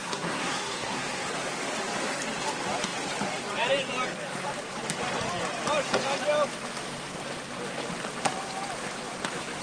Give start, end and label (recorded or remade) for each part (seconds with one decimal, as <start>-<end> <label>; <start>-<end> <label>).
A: 0.0-1.3 remade; 1.3-9.6 recorded